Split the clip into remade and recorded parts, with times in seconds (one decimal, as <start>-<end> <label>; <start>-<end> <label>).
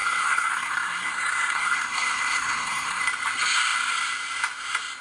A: 0.0-3.0 remade; 3.0-5.0 recorded